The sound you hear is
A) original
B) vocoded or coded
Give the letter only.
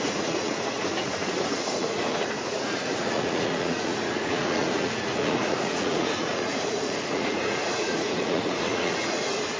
B